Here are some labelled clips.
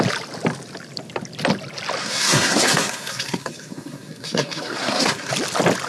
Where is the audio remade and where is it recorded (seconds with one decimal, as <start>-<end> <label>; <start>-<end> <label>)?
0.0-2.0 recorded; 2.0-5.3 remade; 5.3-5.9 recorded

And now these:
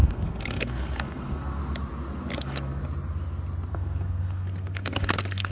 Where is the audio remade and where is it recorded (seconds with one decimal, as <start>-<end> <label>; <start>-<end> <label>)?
0.0-1.6 remade; 1.6-2.4 recorded; 2.4-2.8 remade; 2.8-3.7 recorded; 3.7-5.5 remade

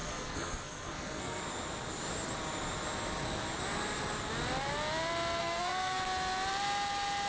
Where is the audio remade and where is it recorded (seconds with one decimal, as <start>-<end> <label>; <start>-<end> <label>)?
0.0-1.4 remade; 1.4-5.4 recorded; 5.4-6.0 remade; 6.0-7.3 recorded

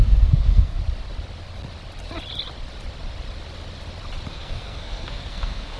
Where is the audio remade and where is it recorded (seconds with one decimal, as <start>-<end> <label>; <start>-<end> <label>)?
0.0-0.8 remade; 0.8-4.3 recorded; 4.3-5.8 remade

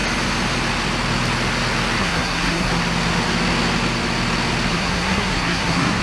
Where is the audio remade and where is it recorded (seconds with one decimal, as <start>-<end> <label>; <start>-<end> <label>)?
0.0-2.0 recorded; 2.0-2.7 remade; 2.7-4.7 recorded; 4.7-6.0 remade